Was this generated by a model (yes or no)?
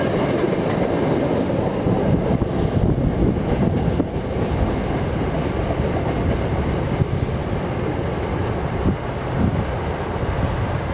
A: no